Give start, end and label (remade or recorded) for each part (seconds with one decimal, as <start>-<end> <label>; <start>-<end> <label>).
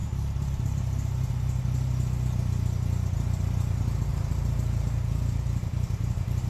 0.0-0.8 remade; 0.8-4.1 recorded; 4.1-6.5 remade